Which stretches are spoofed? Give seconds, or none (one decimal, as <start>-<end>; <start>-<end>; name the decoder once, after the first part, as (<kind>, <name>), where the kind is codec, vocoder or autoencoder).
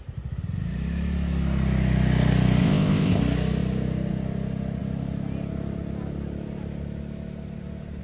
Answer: 2.6-3.2 (codec, ZipCodec)